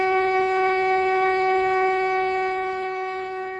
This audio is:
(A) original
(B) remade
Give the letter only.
B